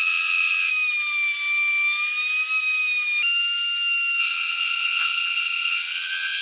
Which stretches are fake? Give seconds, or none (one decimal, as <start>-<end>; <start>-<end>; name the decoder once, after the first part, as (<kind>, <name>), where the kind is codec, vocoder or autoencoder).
0.0-0.7 (vocoder, WaveNeXt); 4.2-6.4